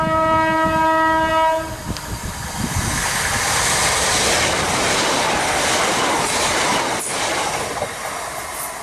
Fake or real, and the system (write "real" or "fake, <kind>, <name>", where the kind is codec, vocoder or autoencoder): real